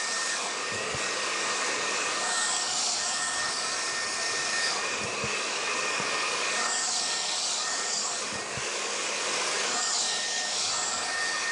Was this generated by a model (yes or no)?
yes